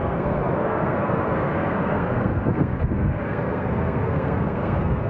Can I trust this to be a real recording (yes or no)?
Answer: no